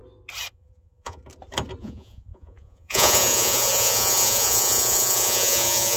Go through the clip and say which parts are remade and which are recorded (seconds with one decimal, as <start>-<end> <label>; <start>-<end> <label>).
0.0-0.5 recorded; 0.5-1.2 remade; 1.2-1.8 recorded; 1.8-6.0 remade